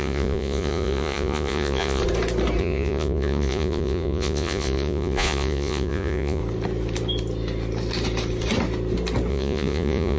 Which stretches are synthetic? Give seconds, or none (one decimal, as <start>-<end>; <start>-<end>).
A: 0.0-2.0; 2.6-6.4; 9.3-10.2